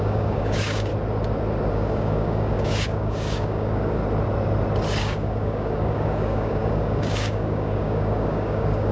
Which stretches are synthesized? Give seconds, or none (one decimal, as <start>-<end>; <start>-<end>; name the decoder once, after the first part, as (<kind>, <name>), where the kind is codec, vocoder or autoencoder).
0.0-0.9 (codec, DAC); 1.7-4.0; 5.0-8.9